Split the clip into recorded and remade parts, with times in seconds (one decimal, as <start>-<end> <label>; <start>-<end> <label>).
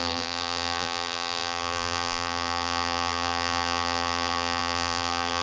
0.0-5.4 remade